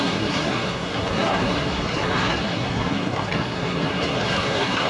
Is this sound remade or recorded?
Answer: remade